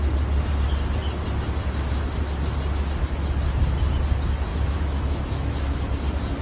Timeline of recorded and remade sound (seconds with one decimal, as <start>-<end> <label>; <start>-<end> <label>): 0.0-4.5 recorded; 4.5-5.8 remade; 5.8-6.4 recorded